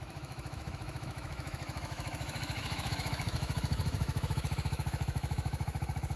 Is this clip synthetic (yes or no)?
yes